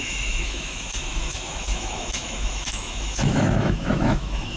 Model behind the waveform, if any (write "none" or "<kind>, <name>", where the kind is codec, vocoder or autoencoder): autoencoder, DAC-VAE